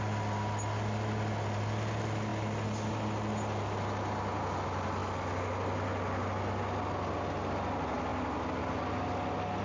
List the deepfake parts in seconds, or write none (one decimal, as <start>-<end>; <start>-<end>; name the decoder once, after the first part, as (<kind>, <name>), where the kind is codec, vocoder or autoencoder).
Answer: none